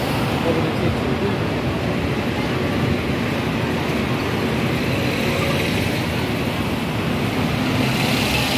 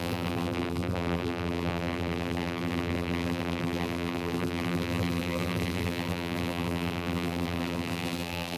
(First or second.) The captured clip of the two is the first